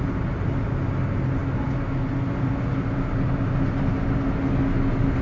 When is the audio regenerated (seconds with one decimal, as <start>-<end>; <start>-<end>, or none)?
none